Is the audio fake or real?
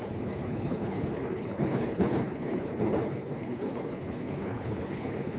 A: fake